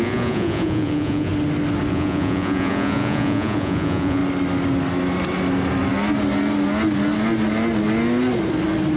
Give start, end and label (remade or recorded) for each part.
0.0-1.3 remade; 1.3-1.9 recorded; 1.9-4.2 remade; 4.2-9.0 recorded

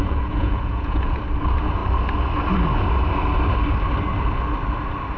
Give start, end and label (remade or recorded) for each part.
0.0-1.2 remade; 1.2-5.2 recorded

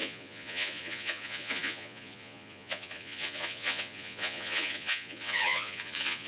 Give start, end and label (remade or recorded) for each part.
0.0-6.3 remade

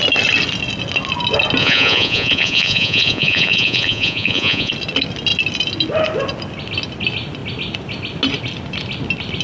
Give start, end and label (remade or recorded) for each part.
0.0-1.6 recorded; 1.6-4.7 remade; 4.7-9.4 recorded

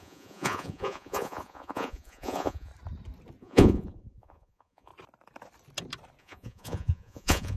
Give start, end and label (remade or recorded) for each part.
0.0-2.7 remade; 2.7-3.4 recorded; 3.4-4.9 remade; 4.9-6.2 recorded; 6.2-7.6 remade